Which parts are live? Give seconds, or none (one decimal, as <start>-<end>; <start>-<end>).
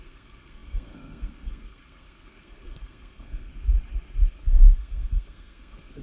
3.5-4.3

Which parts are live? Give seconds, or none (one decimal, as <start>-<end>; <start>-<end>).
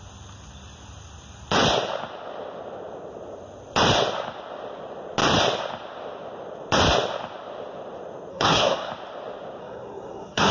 0.0-8.3; 8.9-9.6